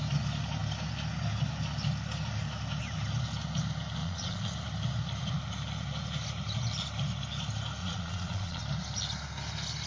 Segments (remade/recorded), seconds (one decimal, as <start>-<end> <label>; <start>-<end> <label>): 0.0-4.0 recorded; 4.0-4.5 remade; 4.5-7.8 recorded; 7.8-8.6 remade; 8.6-9.9 recorded